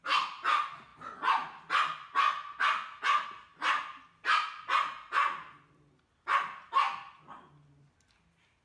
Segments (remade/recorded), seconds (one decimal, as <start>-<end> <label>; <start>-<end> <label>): 0.0-8.6 recorded